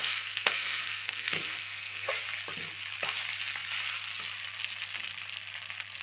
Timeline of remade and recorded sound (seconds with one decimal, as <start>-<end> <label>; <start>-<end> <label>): 0.0-2.1 remade; 2.1-6.0 recorded